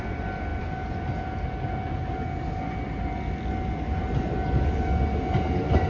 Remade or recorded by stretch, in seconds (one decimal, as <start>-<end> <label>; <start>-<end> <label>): 0.0-5.9 recorded